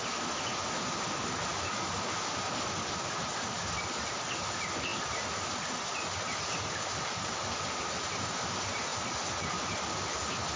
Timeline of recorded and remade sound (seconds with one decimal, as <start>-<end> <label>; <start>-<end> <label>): 0.0-10.6 recorded